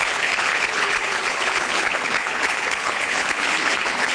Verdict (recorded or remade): remade